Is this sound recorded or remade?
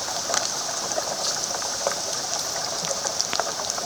remade